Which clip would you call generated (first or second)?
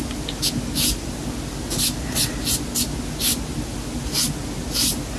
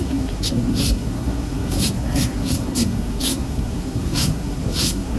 second